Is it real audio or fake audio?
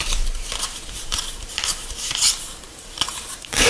fake